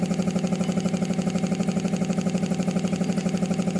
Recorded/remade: recorded